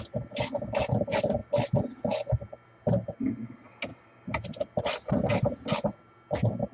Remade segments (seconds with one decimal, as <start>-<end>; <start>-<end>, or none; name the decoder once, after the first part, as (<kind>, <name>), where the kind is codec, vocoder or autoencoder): 3.9-5.3 (vocoder, BigVGAN v2)